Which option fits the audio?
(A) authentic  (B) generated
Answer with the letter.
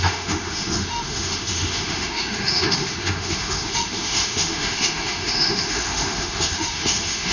B